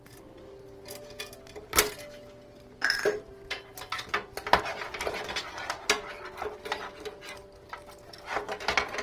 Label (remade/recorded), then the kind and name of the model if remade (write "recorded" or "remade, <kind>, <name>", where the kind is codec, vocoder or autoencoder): recorded